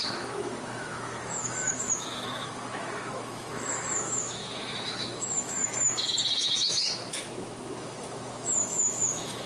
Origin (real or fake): fake